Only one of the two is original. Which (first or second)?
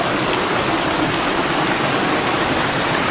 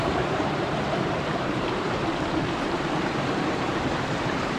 first